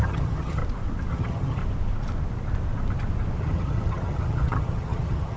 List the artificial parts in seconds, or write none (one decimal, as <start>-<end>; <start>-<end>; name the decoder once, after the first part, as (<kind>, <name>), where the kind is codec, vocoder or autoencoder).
0.0-0.6 (vocoder, HiFi-GAN); 1.1-1.6; 3.4-5.4